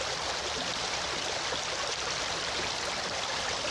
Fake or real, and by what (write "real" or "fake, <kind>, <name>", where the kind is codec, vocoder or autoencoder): real